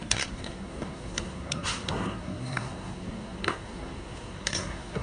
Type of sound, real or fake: fake